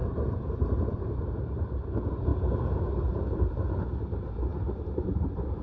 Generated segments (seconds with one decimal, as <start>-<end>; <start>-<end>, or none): 0.6-5.6